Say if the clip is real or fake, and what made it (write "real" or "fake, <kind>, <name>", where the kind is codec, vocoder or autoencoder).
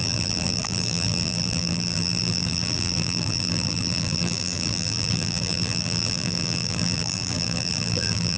fake, vocoder, BigVGAN v2